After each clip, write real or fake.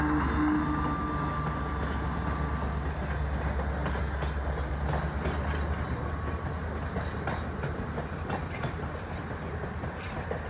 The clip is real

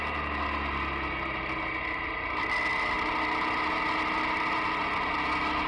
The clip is real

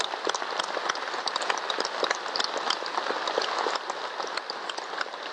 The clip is real